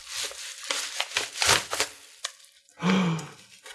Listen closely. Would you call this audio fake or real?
real